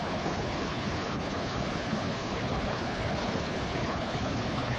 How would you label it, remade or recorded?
remade